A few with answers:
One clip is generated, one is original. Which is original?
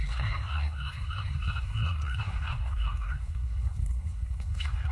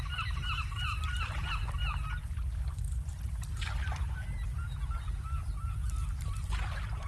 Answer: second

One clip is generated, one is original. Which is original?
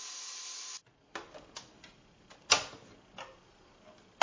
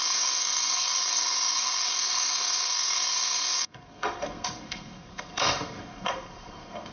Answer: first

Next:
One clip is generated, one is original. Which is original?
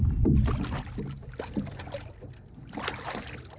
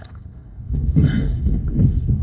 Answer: first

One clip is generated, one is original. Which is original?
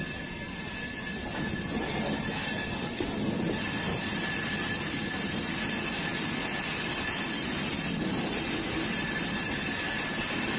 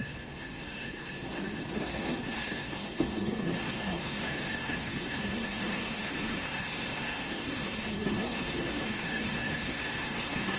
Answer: first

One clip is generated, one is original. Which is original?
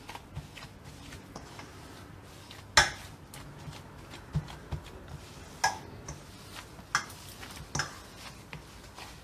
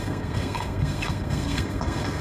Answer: first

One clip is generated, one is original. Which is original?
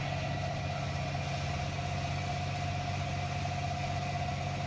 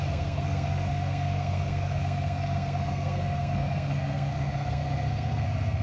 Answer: first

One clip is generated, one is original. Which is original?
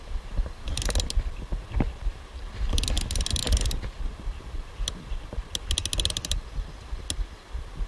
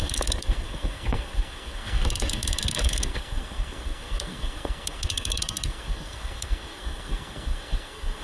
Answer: first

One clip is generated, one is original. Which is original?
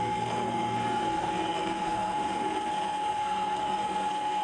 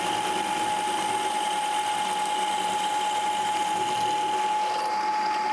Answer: second